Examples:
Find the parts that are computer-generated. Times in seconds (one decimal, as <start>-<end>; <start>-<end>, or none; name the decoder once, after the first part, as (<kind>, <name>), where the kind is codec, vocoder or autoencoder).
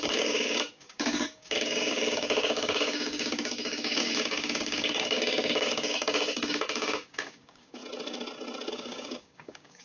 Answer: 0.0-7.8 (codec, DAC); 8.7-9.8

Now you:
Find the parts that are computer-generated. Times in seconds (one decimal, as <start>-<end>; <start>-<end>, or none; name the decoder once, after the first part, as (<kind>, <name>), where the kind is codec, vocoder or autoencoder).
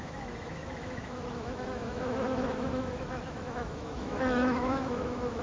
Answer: 0.0-5.4 (autoencoder, DAC-VAE)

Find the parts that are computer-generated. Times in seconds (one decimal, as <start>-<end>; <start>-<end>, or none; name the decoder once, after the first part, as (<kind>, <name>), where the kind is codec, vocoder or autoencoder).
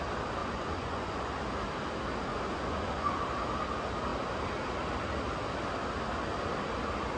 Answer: 0.4-1.3 (vocoder, Vocos); 2.3-3.2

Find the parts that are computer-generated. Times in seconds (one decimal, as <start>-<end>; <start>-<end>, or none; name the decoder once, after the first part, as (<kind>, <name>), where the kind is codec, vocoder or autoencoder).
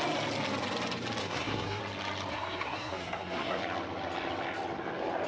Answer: 1.2-1.8 (codec, SNAC); 2.3-3.6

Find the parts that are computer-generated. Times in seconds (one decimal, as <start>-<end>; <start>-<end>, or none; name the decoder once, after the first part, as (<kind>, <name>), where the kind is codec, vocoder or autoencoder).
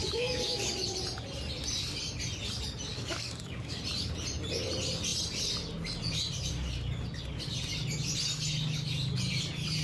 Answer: 0.0-0.6 (codec, DAC); 2.9-3.8